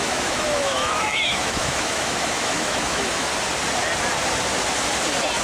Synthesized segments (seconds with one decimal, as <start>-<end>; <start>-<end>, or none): 0.0-3.3

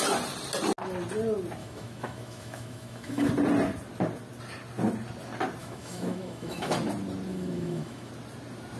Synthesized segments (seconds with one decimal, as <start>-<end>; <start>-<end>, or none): 1.6-3.3; 5.6-6.7; 7.3-8.1

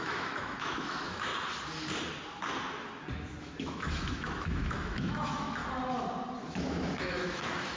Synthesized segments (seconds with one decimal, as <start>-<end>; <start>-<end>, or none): 0.0-1.3; 3.4-5.6; 6.5-7.8

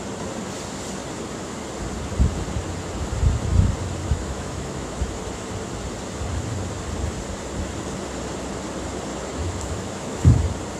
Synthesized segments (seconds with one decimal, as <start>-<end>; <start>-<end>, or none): 4.0-5.5; 9.1-10.4

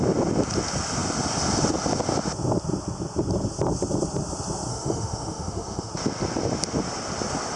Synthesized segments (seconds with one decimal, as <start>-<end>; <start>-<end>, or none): 4.7-5.9

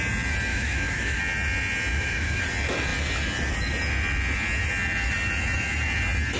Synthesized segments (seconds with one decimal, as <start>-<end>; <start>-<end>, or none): 0.5-1.2; 1.9-2.4